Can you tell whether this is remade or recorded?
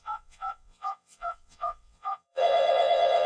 remade